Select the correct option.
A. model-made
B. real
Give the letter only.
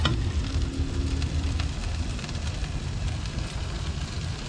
B